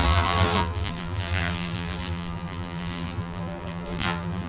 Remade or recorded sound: remade